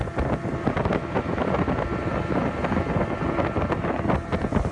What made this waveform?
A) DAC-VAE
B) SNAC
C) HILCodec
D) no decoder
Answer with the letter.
D